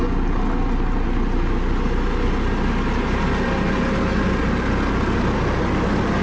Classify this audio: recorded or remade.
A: recorded